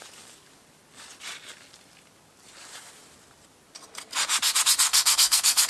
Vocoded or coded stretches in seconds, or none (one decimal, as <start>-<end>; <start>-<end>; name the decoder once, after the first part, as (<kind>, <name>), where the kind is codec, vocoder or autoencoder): 4.9-5.7 (codec, SNAC)